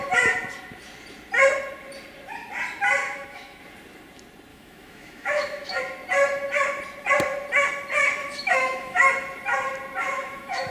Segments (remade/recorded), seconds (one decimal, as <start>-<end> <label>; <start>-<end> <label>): 0.0-3.0 recorded; 3.0-3.6 remade; 3.6-4.5 recorded; 4.5-5.8 remade; 5.8-8.2 recorded; 8.2-9.0 remade; 9.0-10.0 recorded; 10.0-10.7 remade

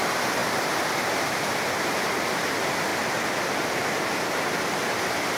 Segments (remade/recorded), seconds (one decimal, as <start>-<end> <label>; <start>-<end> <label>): 0.0-5.4 recorded

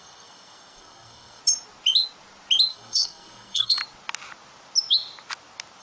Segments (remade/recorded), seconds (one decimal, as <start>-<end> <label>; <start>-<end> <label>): 0.0-1.4 remade; 1.4-2.7 recorded; 2.7-3.8 remade; 3.8-5.8 recorded

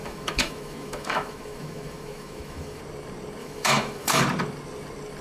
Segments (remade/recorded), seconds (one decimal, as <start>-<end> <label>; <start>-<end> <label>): 0.0-2.8 remade; 2.8-3.4 recorded; 3.4-4.2 remade; 4.2-5.2 recorded

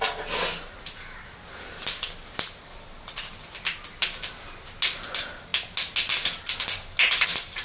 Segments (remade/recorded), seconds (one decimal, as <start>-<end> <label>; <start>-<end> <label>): 0.0-7.6 recorded

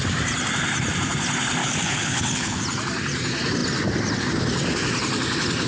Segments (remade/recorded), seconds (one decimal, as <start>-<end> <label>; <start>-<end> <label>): 0.0-1.6 recorded; 1.6-2.6 remade; 2.6-5.7 recorded

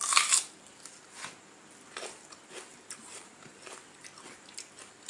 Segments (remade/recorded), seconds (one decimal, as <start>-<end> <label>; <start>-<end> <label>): 0.0-2.7 recorded; 2.7-4.0 remade; 4.0-5.1 recorded